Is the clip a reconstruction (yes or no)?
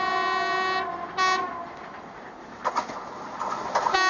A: no